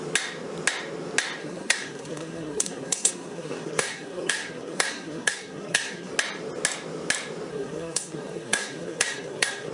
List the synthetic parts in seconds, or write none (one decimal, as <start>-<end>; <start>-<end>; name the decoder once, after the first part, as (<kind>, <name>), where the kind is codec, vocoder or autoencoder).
1.4-6.1 (codec, SNAC); 7.5-9.7